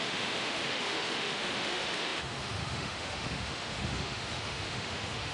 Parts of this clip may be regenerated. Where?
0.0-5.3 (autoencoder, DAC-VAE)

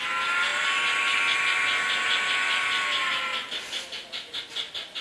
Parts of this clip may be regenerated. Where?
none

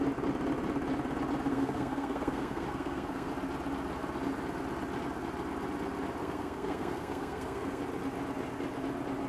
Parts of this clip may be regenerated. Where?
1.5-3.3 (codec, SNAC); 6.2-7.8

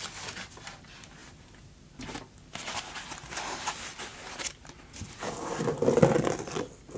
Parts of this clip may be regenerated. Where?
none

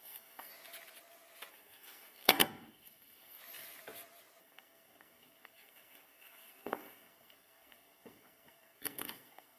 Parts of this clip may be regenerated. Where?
0.0-0.5 (codec, SNAC); 1.5-3.4; 4.4-9.6

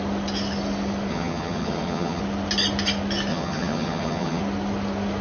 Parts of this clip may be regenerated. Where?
1.1-2.2 (vocoder, HiFi-GAN); 3.3-4.4

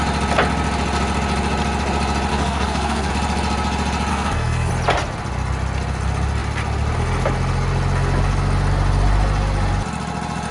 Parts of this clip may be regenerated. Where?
2.3-3.1 (codec, SNAC); 4.1-4.7

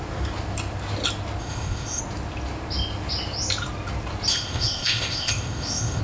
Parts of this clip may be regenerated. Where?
1.4-2.0 (codec, ZipCodec); 4.3-6.0